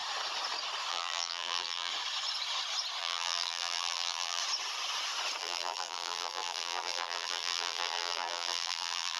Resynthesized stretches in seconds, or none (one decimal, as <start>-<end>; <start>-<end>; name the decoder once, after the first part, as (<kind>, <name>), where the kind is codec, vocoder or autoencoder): 0.9-1.9 (vocoder, BigVGAN v2); 3.0-4.4; 5.4-9.2